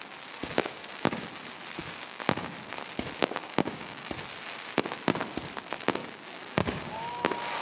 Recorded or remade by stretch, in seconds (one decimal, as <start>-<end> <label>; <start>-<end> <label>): 0.0-0.4 recorded; 0.4-1.3 remade; 1.3-1.8 recorded; 1.8-2.4 remade; 2.4-3.2 recorded; 3.2-4.1 remade; 4.1-6.0 recorded; 6.0-7.1 remade; 7.1-7.6 recorded